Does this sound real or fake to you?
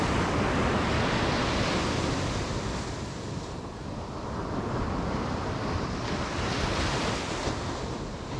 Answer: real